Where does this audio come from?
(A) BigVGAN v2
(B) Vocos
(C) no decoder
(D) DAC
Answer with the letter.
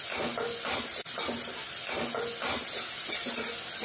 C